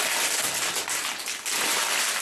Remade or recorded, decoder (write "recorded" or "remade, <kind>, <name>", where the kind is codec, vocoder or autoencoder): recorded